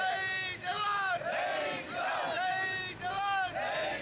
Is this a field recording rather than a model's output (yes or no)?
yes